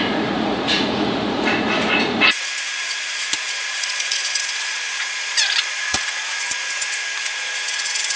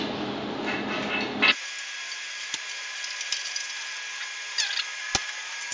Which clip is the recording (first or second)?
second